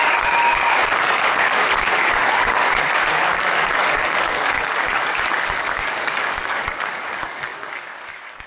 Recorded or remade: remade